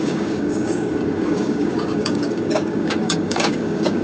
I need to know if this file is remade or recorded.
remade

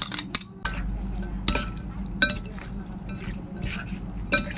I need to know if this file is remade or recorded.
recorded